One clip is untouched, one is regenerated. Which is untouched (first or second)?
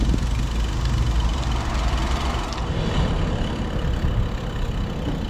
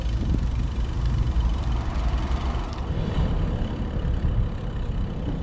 first